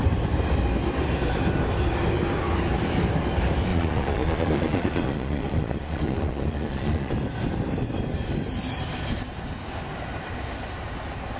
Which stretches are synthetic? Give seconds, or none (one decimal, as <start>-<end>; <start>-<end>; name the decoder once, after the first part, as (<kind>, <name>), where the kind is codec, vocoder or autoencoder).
3.7-7.1 (vocoder, Vocos)